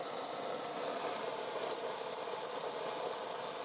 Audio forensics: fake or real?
real